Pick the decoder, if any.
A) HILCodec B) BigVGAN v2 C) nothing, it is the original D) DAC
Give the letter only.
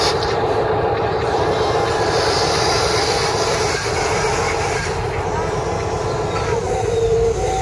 B